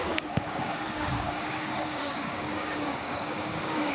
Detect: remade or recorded remade